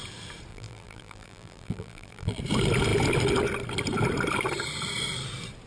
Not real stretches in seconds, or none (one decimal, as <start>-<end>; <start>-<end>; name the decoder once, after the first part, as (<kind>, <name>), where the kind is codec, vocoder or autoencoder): 0.5-2.4 (vocoder, BigVGAN v2)